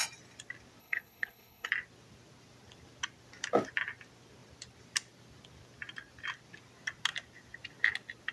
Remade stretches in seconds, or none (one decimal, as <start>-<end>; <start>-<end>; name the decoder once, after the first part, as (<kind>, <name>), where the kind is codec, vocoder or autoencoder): 0.8-1.7 (codec, HILCodec)